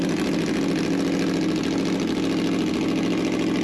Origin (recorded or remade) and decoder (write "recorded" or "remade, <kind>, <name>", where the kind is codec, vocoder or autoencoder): recorded